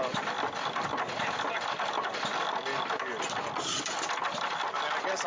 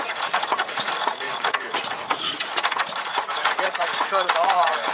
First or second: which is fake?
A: second